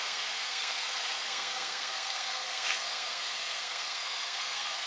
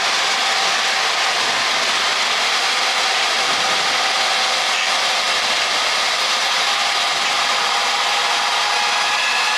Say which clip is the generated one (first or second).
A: first